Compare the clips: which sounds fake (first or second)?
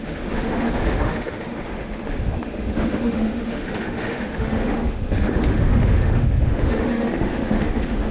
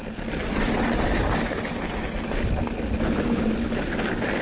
first